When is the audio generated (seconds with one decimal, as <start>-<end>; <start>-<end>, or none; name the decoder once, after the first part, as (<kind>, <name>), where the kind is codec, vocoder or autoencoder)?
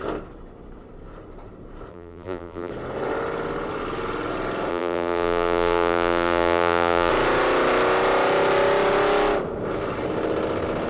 1.9-2.7 (vocoder, BigVGAN v2); 4.7-7.1